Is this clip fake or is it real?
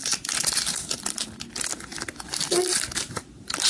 real